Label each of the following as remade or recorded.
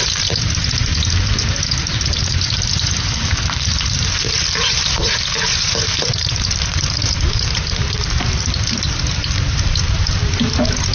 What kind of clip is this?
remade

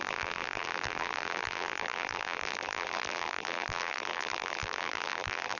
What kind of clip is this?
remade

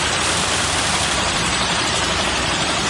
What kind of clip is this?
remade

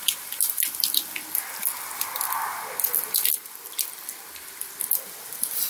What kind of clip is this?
recorded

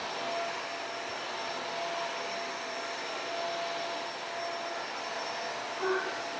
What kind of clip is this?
recorded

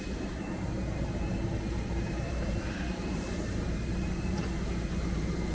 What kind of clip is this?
remade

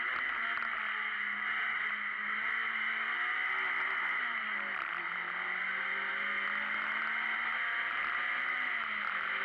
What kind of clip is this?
recorded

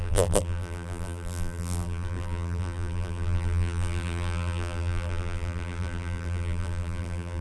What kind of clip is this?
remade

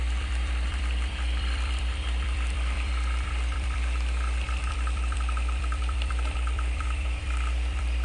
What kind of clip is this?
remade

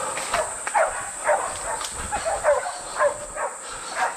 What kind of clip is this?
recorded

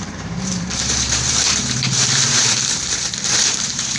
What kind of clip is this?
remade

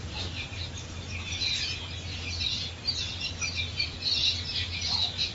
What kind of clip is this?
recorded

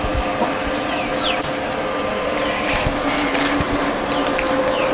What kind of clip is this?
recorded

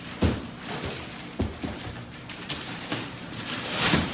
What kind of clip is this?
remade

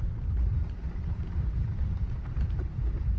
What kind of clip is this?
remade